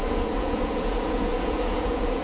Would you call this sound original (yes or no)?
no